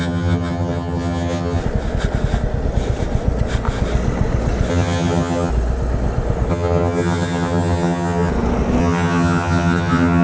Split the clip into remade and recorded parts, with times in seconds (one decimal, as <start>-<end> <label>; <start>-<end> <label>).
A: 0.0-1.6 remade; 1.6-4.7 recorded; 4.7-5.5 remade; 5.5-6.5 recorded; 6.5-8.3 remade; 8.3-8.8 recorded; 8.8-10.2 remade